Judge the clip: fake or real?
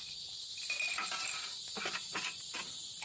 real